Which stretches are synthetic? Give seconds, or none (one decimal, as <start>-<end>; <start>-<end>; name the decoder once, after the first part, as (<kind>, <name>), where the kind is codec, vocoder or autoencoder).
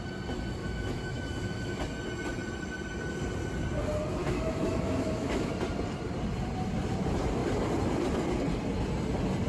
0.6-1.8 (autoencoder, DAC-VAE); 4.2-5.5